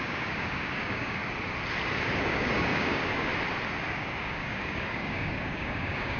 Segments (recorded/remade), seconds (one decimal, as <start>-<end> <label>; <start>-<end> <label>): 0.0-1.2 remade; 1.2-2.0 recorded; 2.0-3.3 remade; 3.3-3.9 recorded; 3.9-6.2 remade